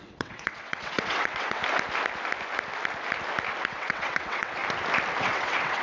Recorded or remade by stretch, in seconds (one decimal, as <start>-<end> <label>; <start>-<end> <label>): 0.0-1.6 remade; 1.6-3.7 recorded; 3.7-4.6 remade; 4.6-5.2 recorded; 5.2-5.8 remade